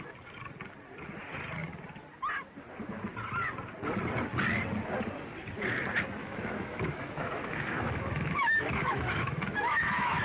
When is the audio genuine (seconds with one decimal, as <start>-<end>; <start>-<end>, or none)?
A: 0.0-6.2